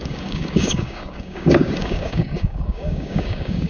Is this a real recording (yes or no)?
no